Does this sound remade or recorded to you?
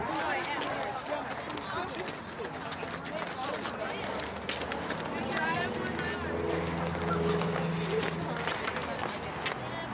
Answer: recorded